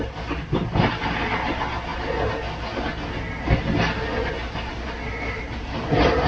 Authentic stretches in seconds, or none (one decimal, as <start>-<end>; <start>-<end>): 1.9-5.4

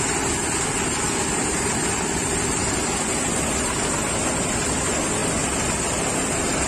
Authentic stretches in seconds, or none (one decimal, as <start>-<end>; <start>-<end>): 0.0-6.7

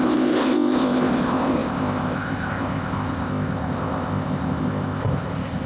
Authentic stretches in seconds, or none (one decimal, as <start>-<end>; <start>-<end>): none

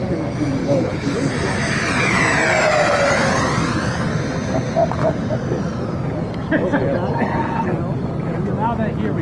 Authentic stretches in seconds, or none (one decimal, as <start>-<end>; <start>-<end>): 0.0-0.6; 1.3-9.2

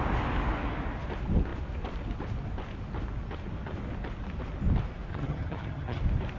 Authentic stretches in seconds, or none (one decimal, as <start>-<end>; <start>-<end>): 0.0-5.1; 6.0-6.4

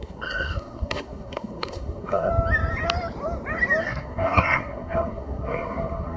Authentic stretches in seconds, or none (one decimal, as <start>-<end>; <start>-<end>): 2.3-3.8

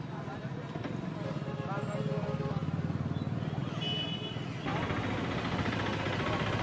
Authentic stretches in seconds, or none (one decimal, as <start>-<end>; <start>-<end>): 0.0-6.6

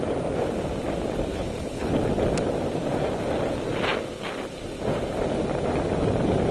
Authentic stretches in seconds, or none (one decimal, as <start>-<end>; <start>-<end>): 0.0-1.3; 1.9-6.5